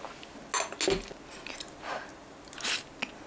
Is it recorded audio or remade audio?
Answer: recorded